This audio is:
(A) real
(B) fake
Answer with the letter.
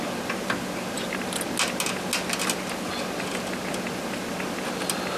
A